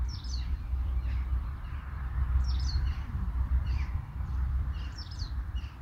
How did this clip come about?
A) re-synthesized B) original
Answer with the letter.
A